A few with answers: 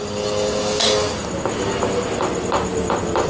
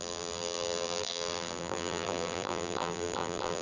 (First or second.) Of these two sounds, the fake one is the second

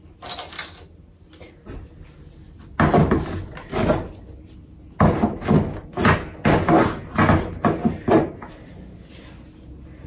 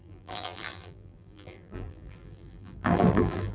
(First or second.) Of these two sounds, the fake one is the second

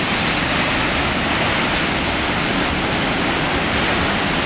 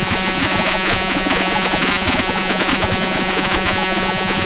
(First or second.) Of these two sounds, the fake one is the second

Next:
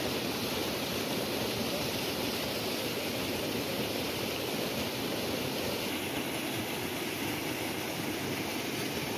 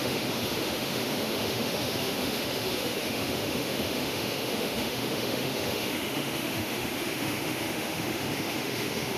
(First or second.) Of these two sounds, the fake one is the second